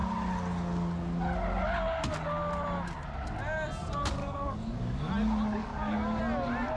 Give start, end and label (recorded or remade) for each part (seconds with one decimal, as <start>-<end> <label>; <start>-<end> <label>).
0.0-4.2 recorded; 4.2-5.1 remade; 5.1-5.6 recorded; 5.6-6.2 remade; 6.2-6.8 recorded